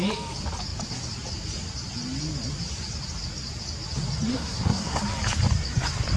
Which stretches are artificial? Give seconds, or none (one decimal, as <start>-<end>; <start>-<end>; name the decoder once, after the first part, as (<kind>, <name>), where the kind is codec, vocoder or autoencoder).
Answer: 4.3-5.0 (codec, SNAC)